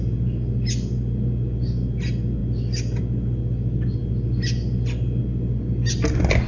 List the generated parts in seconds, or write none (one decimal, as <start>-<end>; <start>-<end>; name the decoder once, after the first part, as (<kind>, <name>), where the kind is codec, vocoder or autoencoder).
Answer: none